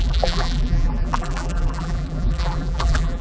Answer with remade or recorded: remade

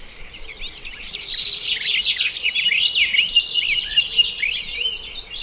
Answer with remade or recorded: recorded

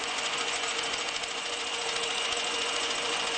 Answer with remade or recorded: remade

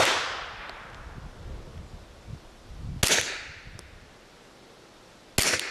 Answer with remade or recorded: recorded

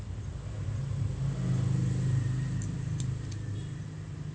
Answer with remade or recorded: recorded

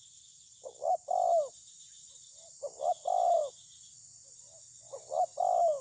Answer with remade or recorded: recorded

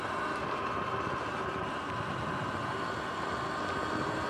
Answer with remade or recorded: recorded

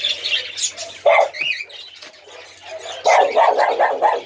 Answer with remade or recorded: recorded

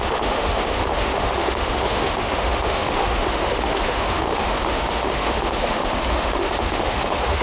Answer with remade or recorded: remade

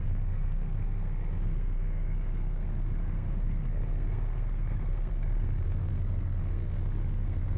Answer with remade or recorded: remade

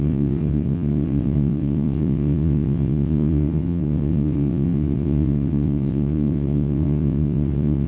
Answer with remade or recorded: remade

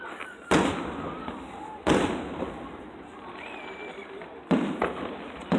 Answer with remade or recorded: recorded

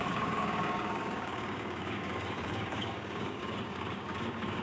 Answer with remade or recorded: remade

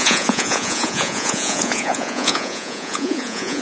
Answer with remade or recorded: remade